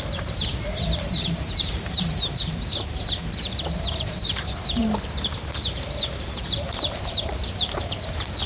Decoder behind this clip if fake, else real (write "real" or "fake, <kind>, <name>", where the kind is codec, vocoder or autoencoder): fake, vocoder, BigVGAN v2